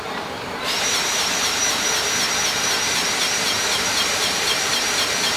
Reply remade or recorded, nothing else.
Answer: remade